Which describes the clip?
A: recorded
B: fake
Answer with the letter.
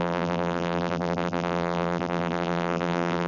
B